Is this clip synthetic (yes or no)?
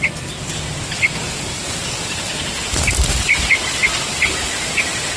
no